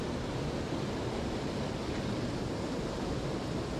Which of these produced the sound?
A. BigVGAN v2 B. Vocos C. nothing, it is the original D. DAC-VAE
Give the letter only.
C